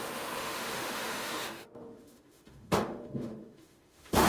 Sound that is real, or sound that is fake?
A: fake